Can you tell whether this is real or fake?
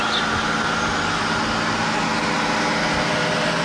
real